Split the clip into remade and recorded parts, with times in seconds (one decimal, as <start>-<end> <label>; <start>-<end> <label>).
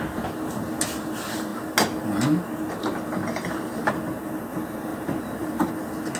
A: 0.0-3.2 recorded; 3.2-3.9 remade; 3.9-4.9 recorded; 4.9-5.7 remade; 5.7-6.2 recorded